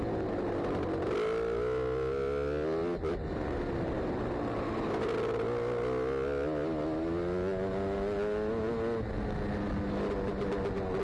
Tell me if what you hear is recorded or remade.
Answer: recorded